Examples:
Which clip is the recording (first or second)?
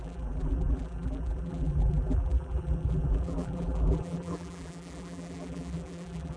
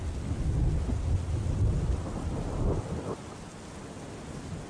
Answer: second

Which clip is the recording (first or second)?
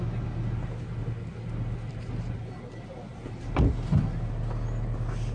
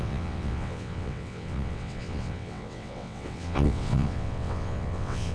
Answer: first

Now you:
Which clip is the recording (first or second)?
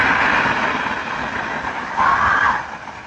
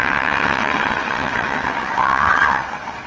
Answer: first